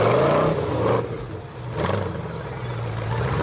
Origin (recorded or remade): recorded